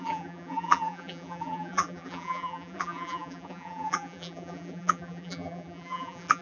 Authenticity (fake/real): fake